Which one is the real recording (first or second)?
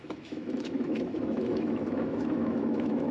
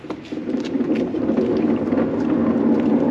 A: second